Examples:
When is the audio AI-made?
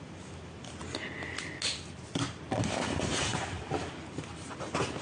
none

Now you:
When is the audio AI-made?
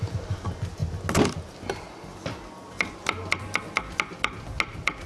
none